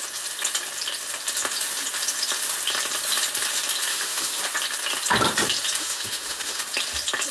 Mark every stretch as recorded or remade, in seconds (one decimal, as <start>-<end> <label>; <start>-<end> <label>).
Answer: 0.0-3.9 recorded; 3.9-4.4 remade; 4.4-5.8 recorded; 5.8-6.6 remade; 6.6-7.3 recorded